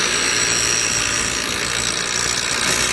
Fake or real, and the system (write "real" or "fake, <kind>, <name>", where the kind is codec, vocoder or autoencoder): real